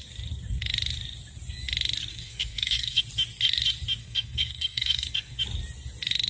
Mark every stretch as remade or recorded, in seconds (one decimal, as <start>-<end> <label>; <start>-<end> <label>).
0.0-2.1 recorded; 2.1-3.0 remade; 3.0-4.0 recorded; 4.0-5.4 remade; 5.4-6.3 recorded